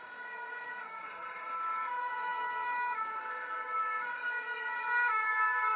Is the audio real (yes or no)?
no